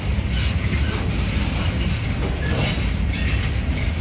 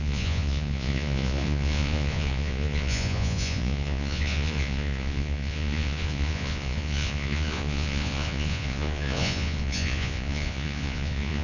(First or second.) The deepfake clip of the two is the second